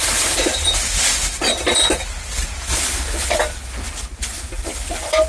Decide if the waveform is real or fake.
real